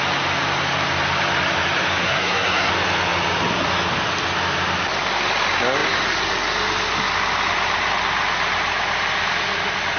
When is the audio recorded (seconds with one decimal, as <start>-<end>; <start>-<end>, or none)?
0.0-2.0; 2.7-10.0